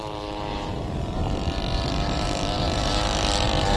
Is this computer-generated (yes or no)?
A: yes